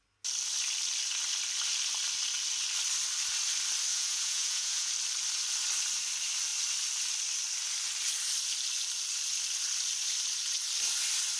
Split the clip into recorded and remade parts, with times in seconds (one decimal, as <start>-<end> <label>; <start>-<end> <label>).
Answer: 0.0-3.9 recorded; 3.9-4.9 remade; 4.9-11.4 recorded